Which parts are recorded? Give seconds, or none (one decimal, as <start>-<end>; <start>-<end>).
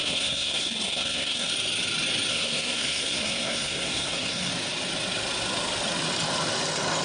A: 1.5-2.3; 4.5-7.0